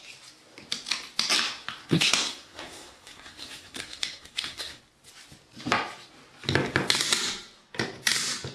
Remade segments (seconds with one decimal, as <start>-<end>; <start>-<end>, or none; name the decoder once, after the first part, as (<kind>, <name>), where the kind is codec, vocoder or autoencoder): 1.8-4.8 (codec, SNAC)